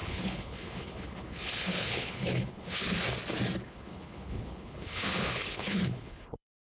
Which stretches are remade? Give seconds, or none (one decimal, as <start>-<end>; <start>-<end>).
0.0-3.0; 3.6-6.6

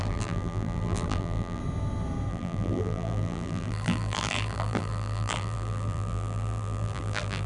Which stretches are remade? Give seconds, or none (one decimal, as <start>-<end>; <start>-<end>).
0.0-1.6; 2.3-7.5